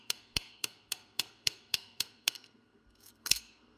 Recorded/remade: remade